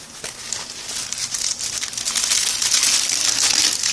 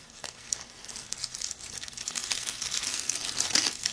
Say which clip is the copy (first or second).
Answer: second